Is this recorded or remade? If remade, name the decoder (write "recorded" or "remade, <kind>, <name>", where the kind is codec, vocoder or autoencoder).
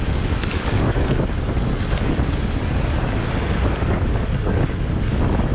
remade, codec, DAC